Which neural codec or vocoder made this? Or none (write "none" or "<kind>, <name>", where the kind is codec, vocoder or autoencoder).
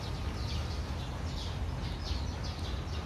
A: none